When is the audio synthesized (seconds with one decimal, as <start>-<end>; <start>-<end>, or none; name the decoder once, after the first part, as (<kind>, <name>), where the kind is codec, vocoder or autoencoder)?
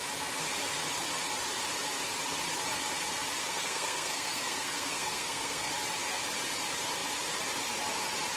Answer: 3.4-5.7 (codec, SNAC)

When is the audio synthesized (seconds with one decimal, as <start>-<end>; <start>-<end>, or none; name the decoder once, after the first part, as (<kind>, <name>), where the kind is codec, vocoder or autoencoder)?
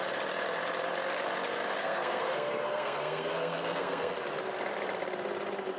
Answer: 1.8-4.1 (codec, SNAC)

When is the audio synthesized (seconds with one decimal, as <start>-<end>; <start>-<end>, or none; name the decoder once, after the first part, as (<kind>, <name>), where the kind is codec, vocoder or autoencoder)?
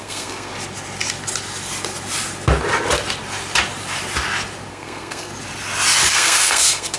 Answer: 0.0-0.5 (codec, SNAC); 4.7-5.3; 6.1-7.0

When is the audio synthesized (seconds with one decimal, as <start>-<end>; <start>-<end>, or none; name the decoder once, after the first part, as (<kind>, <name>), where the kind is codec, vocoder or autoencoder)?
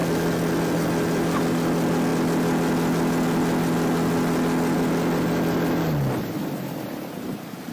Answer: none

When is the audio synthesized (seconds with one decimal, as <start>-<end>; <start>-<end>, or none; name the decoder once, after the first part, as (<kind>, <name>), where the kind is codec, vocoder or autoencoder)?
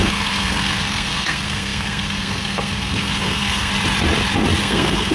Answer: 0.0-3.7 (codec, SNAC); 4.6-5.1